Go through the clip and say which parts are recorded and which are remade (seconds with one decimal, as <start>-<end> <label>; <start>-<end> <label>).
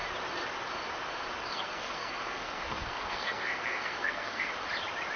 0.0-1.4 recorded; 1.4-4.5 remade; 4.5-5.2 recorded